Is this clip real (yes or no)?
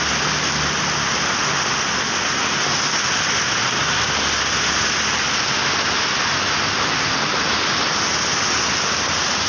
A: yes